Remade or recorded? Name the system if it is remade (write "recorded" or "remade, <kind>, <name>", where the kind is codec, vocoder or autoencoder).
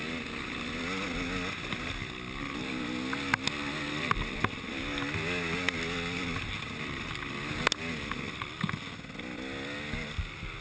recorded